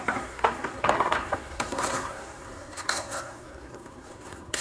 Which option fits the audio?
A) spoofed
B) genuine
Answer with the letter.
A